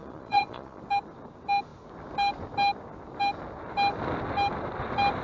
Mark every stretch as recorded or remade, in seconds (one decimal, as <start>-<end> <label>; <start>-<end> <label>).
0.0-0.8 remade; 0.8-5.2 recorded